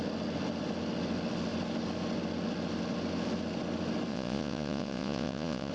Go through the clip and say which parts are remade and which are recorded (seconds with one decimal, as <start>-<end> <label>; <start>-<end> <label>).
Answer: 0.0-4.1 recorded; 4.1-5.7 remade